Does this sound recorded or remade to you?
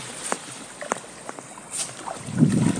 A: recorded